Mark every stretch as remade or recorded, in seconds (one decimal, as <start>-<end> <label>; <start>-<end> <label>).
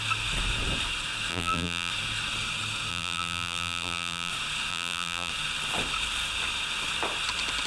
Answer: 0.0-1.3 recorded; 1.3-1.9 remade; 1.9-2.9 recorded; 2.9-4.3 remade; 4.3-4.7 recorded; 4.7-5.3 remade; 5.3-7.7 recorded